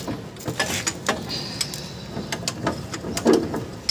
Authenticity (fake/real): real